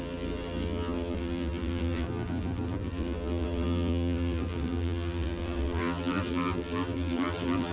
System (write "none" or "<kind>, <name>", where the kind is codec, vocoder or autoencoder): vocoder, BigVGAN v2